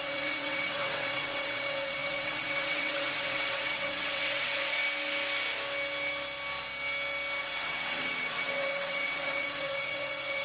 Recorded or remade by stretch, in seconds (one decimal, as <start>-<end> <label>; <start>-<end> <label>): 0.0-4.8 remade; 4.8-7.4 recorded; 7.4-10.4 remade